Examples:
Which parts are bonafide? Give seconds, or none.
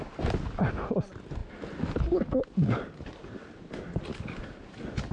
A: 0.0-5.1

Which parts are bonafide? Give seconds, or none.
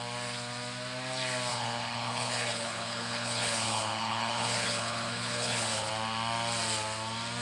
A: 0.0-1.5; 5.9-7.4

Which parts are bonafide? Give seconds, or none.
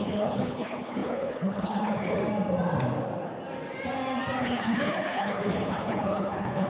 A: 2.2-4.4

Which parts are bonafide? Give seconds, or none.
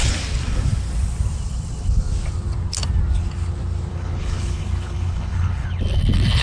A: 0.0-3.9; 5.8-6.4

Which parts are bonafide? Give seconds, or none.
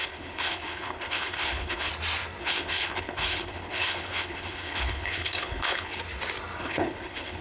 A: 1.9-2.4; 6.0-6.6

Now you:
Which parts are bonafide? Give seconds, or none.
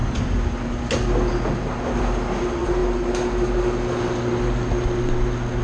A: 0.0-5.6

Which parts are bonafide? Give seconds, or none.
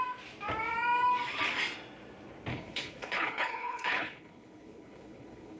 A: 0.0-2.5